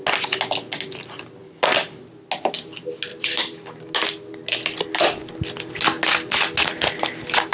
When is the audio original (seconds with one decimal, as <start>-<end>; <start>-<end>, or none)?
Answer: 0.0-3.1; 3.8-7.5